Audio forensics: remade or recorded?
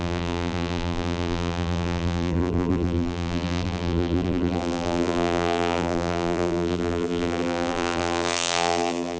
remade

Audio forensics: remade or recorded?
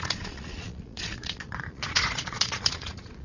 remade